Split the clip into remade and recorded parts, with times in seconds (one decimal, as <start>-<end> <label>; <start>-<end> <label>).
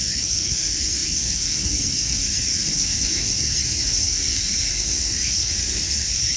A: 0.0-6.4 remade